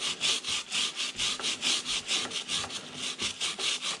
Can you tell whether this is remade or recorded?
recorded